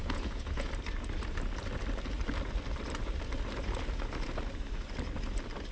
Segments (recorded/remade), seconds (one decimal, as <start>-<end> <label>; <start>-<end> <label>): 0.0-0.7 remade; 0.7-5.7 recorded